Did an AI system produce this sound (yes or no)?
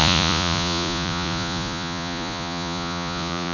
yes